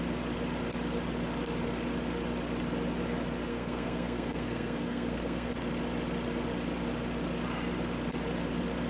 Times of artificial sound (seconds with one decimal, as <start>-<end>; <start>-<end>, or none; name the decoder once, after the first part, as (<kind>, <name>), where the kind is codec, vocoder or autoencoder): 3.5-5.5 (codec, SNAC)